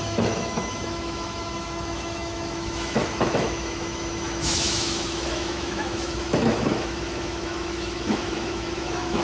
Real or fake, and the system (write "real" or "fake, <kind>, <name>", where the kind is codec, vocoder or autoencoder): fake, autoencoder, DAC-VAE